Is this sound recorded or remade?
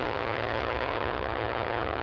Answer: remade